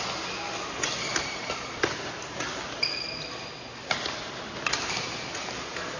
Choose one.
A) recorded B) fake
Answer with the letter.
A